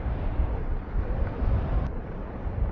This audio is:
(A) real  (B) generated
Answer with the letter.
A